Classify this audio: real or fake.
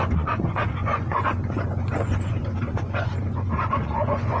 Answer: fake